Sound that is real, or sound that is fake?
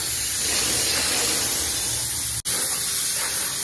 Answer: real